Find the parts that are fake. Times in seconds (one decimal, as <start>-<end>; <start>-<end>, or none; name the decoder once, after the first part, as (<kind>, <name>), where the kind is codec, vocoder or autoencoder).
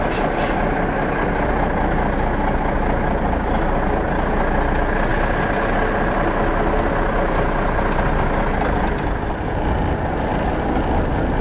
none